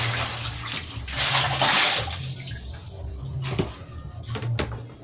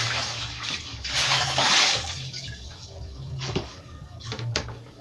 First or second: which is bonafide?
first